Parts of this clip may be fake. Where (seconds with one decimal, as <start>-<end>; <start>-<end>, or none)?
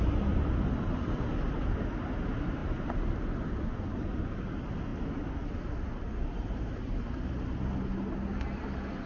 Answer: none